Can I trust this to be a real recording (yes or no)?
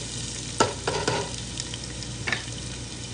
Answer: yes